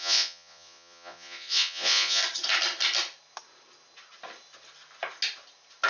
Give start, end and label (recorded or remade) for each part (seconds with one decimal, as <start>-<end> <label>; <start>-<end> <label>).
0.0-2.2 remade; 2.2-5.9 recorded